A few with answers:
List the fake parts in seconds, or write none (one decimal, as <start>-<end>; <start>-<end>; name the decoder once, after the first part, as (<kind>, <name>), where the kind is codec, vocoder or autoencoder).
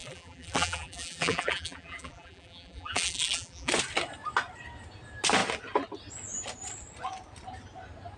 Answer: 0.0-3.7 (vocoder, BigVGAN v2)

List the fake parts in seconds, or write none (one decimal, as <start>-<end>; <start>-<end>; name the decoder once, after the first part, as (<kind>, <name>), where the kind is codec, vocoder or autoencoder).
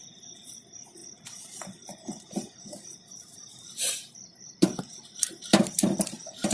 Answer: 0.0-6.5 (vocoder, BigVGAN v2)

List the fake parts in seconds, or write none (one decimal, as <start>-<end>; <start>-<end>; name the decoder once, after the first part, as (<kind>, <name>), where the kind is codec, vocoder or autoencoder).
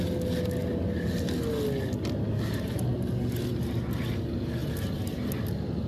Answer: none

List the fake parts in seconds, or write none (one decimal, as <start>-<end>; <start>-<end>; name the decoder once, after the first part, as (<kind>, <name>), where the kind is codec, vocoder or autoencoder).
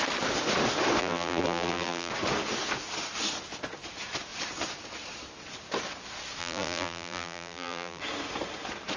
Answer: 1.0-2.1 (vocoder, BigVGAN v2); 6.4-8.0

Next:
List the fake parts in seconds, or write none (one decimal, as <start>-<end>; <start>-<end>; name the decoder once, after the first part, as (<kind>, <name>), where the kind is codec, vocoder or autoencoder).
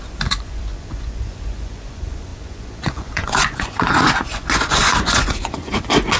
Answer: 0.0-6.2 (vocoder, Vocos)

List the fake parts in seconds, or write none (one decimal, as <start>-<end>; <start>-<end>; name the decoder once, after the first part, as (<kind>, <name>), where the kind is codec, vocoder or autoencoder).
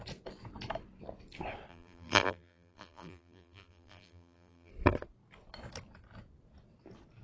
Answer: 1.7-4.7 (vocoder, BigVGAN v2)